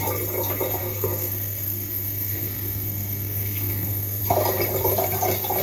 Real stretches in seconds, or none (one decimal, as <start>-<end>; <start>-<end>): 0.0-0.8; 4.2-5.6